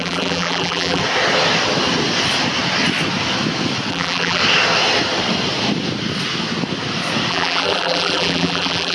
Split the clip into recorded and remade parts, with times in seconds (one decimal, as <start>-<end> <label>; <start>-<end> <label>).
0.0-1.0 remade; 1.0-3.9 recorded; 3.9-4.4 remade; 4.4-7.3 recorded; 7.3-8.9 remade